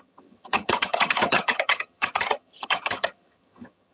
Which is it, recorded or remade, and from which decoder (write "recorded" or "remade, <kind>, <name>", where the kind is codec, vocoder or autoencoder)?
remade, vocoder, HiFi-GAN